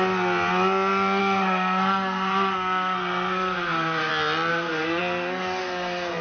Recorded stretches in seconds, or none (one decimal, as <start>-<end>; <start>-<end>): 0.0-1.2; 4.1-4.5; 5.0-5.6